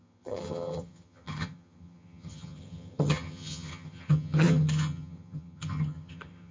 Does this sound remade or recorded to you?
remade